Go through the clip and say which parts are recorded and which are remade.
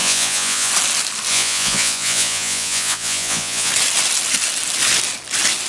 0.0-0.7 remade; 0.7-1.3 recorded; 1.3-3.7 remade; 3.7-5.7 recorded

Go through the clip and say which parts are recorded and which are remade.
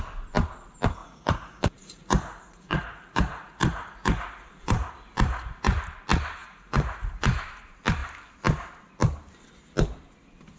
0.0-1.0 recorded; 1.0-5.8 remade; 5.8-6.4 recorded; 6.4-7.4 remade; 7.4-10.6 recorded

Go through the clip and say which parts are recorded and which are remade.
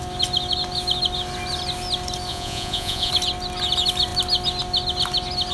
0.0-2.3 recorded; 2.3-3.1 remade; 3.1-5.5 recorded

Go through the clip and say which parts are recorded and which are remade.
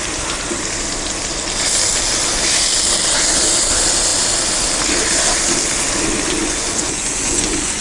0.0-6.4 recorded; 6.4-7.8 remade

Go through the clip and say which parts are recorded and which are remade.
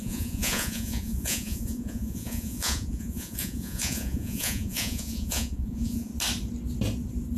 0.0-6.1 remade; 6.1-7.4 recorded